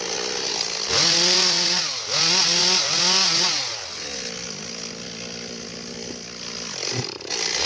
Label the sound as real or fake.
real